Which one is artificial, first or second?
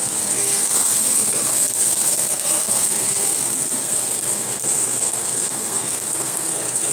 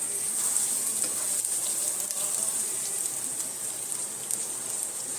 first